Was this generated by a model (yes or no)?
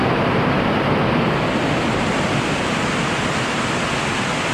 no